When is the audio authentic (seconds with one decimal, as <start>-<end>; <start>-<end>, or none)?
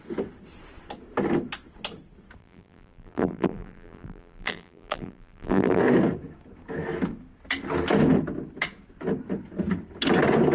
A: 0.0-2.4; 5.8-10.5